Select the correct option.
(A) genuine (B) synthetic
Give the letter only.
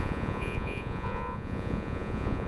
B